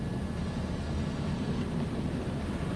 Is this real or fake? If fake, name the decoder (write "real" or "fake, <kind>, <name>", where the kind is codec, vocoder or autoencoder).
real